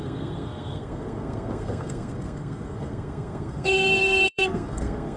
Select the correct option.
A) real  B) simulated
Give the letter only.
B